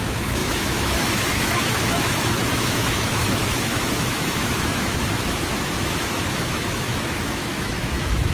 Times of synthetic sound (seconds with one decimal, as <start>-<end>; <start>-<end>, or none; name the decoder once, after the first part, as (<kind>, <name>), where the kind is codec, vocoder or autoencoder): 0.0-8.3 (autoencoder, DAC-VAE)